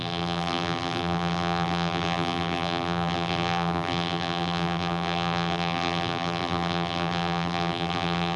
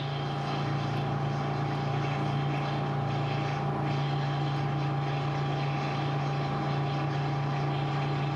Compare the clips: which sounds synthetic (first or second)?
first